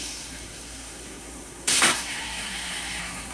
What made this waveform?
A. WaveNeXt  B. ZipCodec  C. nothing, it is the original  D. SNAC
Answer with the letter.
D